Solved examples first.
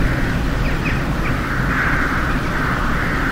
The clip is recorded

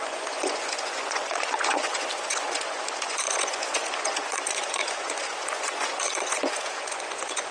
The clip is remade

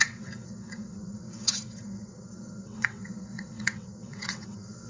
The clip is remade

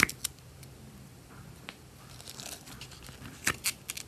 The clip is remade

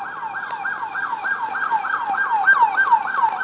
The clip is recorded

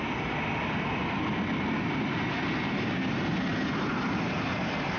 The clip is recorded